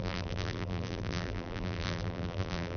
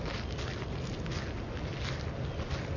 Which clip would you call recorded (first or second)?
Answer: second